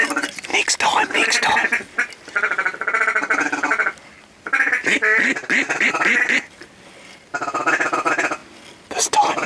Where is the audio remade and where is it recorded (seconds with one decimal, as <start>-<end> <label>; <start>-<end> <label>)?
0.0-9.5 recorded